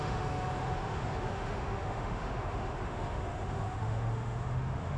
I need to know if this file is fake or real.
fake